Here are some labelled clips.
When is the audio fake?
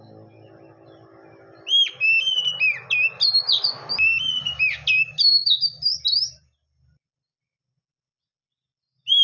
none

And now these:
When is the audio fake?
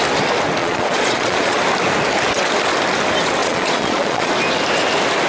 0.6-1.6 (vocoder, Vocos); 3.4-4.3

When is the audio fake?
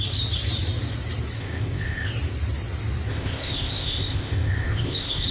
1.4-2.1 (codec, ZipCodec); 3.1-5.3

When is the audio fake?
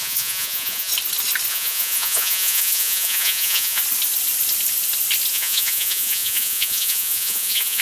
0.0-0.9 (vocoder, Vocos); 1.5-3.8; 5.3-7.8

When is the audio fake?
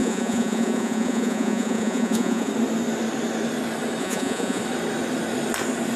0.0-2.5 (vocoder, Vocos); 4.0-4.6